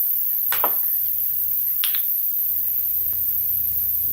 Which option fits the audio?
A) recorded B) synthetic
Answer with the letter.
A